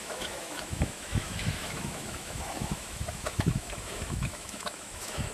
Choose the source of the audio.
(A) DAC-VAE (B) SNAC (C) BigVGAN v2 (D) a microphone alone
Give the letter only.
A